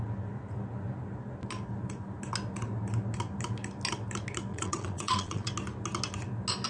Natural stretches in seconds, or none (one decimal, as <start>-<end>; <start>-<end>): 0.0-4.5; 5.5-6.7